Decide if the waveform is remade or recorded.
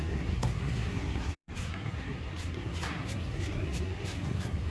remade